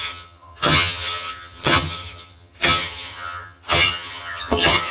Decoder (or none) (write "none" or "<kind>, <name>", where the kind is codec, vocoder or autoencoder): vocoder, HiFi-GAN